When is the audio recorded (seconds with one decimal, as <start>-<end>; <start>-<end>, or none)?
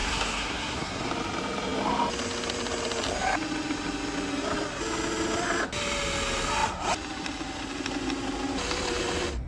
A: 1.1-9.5